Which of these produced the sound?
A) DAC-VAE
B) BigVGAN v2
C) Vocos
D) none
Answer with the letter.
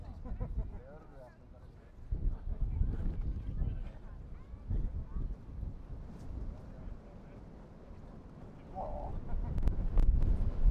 D